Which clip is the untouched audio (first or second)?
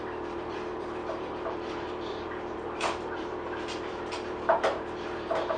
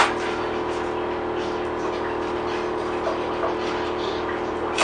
second